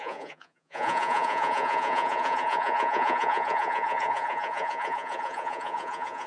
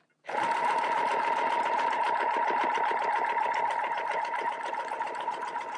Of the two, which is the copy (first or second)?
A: first